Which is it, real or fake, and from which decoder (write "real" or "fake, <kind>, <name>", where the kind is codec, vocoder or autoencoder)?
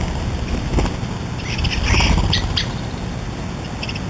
real